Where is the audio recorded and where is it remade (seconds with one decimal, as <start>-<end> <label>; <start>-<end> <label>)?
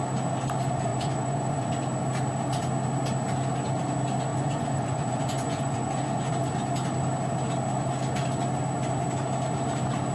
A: 0.0-0.9 recorded; 0.9-1.7 remade; 1.7-4.3 recorded; 4.3-6.3 remade; 6.3-10.1 recorded